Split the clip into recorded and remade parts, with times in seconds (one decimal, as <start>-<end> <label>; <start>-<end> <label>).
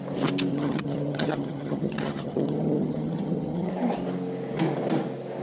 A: 0.0-0.5 recorded; 0.5-3.7 remade; 3.7-5.4 recorded